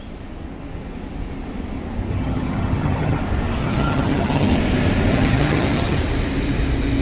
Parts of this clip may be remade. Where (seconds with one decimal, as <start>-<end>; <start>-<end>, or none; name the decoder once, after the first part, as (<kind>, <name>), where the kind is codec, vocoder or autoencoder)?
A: 2.1-3.2 (vocoder, HiFi-GAN); 3.6-4.6; 5.1-6.0